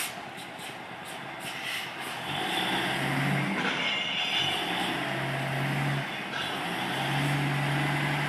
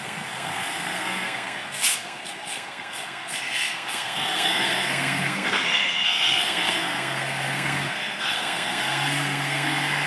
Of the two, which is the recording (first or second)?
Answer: first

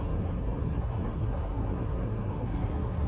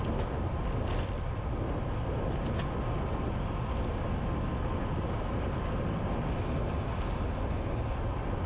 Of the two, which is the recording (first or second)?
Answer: second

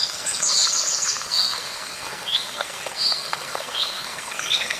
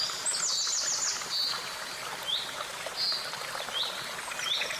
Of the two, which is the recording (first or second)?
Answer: second